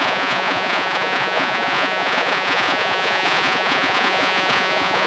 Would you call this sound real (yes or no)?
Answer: no